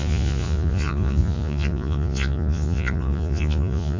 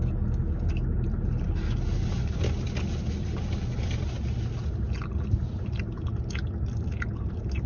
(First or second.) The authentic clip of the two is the second